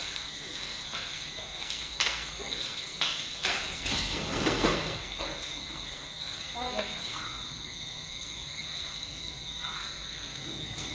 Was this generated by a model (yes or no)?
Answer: yes